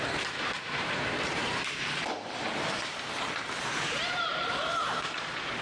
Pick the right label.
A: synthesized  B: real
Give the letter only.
A